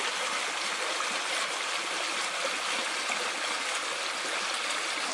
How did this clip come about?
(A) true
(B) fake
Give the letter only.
A